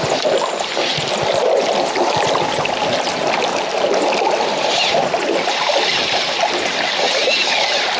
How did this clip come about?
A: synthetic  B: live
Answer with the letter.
B